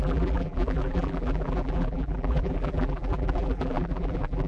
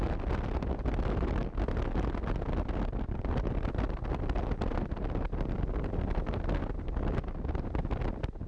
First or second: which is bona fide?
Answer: second